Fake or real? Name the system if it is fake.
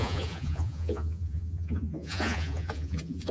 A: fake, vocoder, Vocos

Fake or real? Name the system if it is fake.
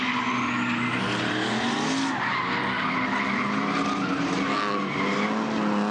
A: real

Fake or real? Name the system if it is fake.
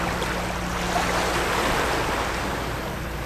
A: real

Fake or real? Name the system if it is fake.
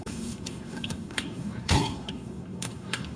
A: fake, codec, SNAC